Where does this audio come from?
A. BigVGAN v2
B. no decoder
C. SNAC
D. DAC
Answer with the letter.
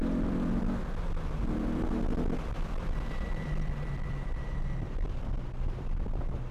A